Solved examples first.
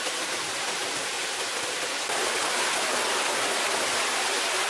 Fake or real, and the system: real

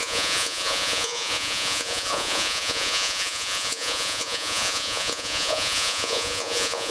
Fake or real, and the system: fake, vocoder, Vocos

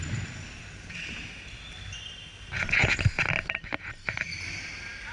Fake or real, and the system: real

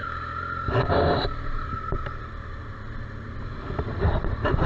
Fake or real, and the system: real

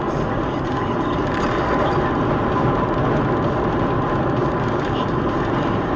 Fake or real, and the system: real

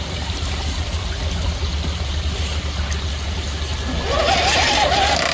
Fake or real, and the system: real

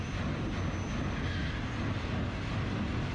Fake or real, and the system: real